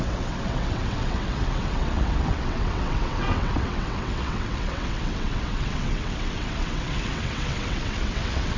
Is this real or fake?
fake